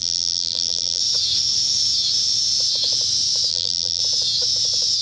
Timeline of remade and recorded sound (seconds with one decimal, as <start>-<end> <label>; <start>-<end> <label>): 0.0-1.0 remade; 1.0-3.5 recorded; 3.5-4.0 remade; 4.0-5.0 recorded